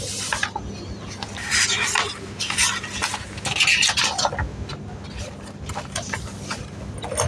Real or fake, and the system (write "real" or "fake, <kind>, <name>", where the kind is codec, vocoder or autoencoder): real